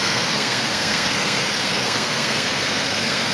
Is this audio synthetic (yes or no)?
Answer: yes